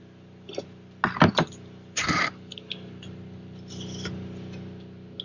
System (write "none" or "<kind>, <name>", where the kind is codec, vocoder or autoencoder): none